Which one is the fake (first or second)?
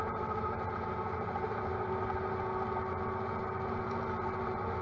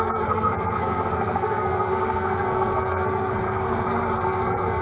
second